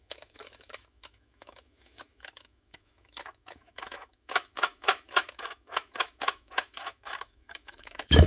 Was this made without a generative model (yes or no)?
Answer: no